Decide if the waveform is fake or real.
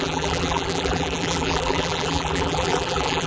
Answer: fake